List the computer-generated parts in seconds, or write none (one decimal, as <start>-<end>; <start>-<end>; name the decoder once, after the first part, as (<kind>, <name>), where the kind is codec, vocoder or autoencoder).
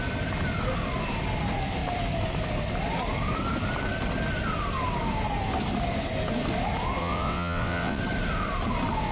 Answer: 7.0-8.0 (vocoder, WaveNeXt)